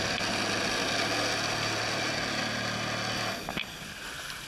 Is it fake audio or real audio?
real